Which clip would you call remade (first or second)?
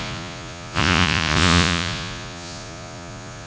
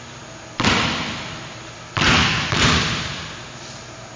first